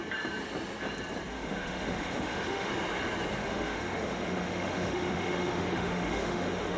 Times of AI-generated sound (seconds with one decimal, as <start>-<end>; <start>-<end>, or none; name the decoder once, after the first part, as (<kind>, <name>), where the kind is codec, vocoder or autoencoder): 1.3-2.7 (autoencoder, DAC-VAE); 3.4-6.8